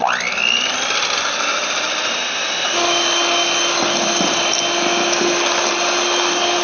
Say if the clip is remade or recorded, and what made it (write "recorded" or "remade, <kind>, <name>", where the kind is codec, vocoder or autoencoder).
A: recorded